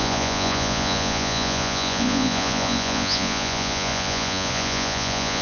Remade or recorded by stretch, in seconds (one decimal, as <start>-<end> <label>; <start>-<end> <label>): 0.0-5.4 remade